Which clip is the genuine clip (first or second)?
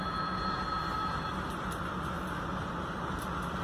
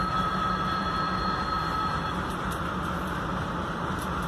first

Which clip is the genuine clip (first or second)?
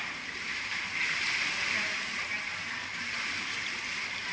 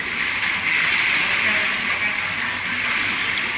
second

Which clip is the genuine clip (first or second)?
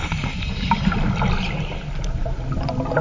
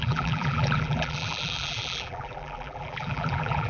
first